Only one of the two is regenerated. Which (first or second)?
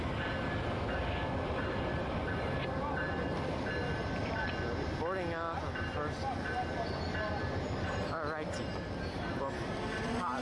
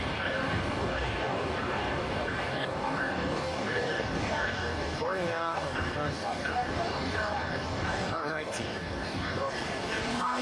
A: second